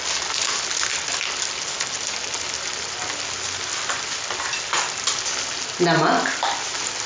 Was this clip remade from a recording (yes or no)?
no